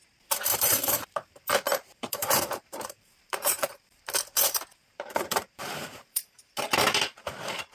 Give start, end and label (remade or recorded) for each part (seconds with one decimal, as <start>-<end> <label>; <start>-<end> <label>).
0.0-0.5 recorded; 0.5-4.0 remade; 4.0-4.8 recorded; 4.8-6.5 remade; 6.5-7.7 recorded